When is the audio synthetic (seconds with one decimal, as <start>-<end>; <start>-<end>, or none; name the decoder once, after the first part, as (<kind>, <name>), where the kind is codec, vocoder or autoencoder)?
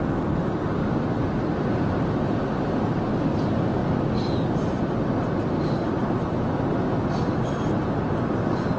none